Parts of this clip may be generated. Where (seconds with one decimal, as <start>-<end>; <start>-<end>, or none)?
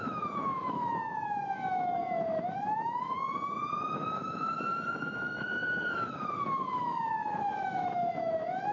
0.0-8.7